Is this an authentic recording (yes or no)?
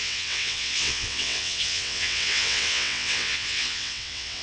no